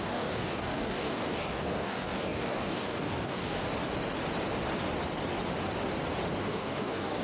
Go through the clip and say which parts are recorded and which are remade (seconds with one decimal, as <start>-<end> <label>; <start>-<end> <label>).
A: 0.0-3.6 remade; 3.6-6.4 recorded; 6.4-7.2 remade